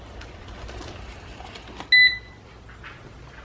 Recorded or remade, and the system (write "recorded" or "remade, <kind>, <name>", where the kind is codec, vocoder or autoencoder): recorded